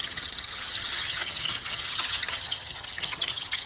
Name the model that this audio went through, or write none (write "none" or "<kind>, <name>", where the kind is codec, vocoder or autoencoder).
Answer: vocoder, HiFi-GAN